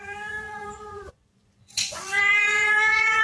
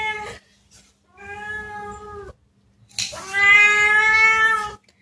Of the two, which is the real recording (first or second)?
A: second